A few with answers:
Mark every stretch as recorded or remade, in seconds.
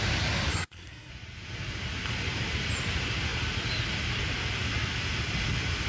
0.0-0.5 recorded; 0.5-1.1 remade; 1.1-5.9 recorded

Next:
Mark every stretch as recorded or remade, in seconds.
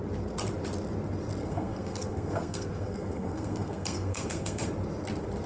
0.0-1.4 recorded; 1.4-4.7 remade; 4.7-5.5 recorded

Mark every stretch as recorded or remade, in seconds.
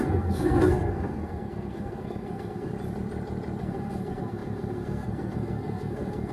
0.0-2.7 remade; 2.7-3.6 recorded; 3.6-6.3 remade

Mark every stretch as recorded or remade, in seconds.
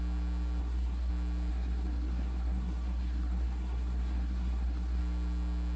0.0-0.6 recorded; 0.6-1.1 remade; 1.1-1.5 recorded; 1.5-5.0 remade; 5.0-5.8 recorded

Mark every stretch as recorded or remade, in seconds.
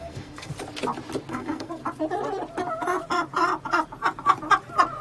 0.0-0.5 remade; 0.5-1.3 recorded; 1.3-1.8 remade; 1.8-5.0 recorded